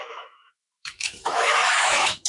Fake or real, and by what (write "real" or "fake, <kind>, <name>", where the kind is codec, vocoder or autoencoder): fake, autoencoder, DAC-VAE